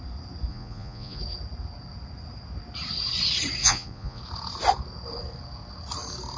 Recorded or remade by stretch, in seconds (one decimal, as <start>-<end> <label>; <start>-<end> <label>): 0.0-0.5 recorded; 0.5-1.2 remade; 1.2-3.6 recorded; 3.6-4.2 remade; 4.2-6.4 recorded